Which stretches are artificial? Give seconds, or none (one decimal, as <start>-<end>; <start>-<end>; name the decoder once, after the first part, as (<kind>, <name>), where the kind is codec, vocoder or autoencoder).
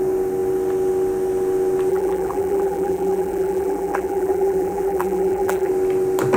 1.9-5.7 (vocoder, BigVGAN v2)